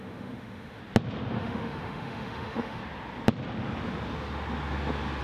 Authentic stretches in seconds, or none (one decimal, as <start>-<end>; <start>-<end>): 0.8-1.4; 2.8-5.2